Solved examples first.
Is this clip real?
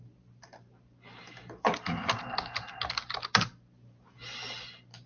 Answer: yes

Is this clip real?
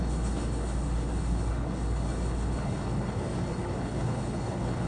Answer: no